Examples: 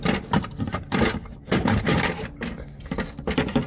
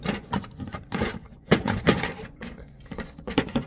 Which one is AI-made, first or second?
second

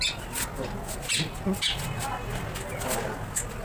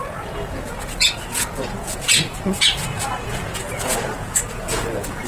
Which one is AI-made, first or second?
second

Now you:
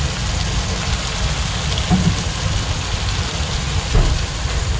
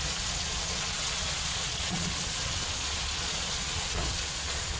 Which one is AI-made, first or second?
second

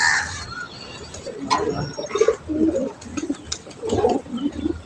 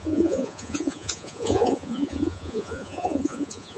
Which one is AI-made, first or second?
second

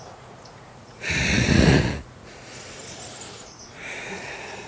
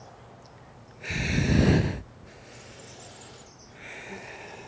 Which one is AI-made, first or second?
first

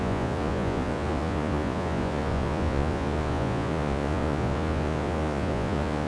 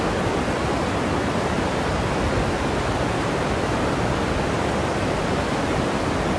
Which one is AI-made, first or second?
first